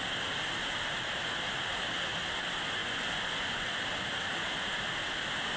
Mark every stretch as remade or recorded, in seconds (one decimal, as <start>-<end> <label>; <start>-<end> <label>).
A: 0.0-2.8 recorded; 2.8-3.8 remade; 3.8-5.6 recorded